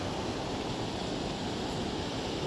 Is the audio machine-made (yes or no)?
no